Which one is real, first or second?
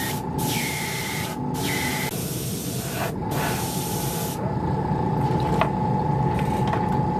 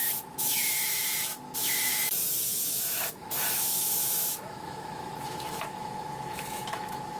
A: first